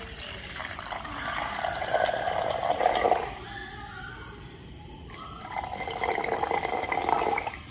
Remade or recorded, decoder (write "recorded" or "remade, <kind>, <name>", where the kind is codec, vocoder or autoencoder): recorded